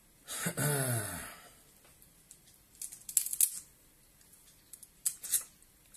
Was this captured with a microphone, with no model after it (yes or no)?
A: yes